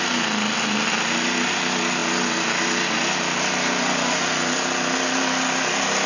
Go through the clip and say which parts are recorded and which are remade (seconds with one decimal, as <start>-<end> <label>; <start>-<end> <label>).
0.0-6.1 recorded